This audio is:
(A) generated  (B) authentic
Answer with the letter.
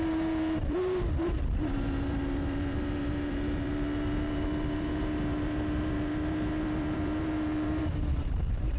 A